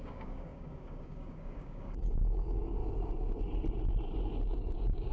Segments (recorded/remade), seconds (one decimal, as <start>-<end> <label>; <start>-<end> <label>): 0.0-2.8 remade; 2.8-4.5 recorded; 4.5-5.1 remade